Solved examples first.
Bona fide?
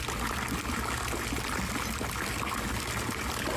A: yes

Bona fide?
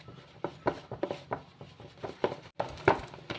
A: yes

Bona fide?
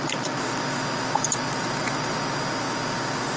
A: yes